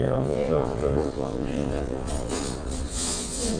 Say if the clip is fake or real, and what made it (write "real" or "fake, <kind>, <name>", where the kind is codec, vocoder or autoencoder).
fake, vocoder, Vocos